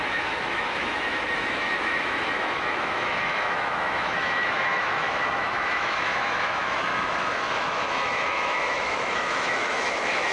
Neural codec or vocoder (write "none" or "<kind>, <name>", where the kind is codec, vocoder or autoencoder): autoencoder, DAC-VAE